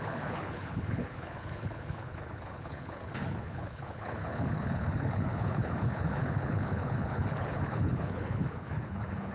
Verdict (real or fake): fake